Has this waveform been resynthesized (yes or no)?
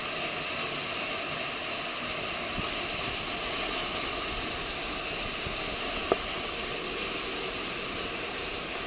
no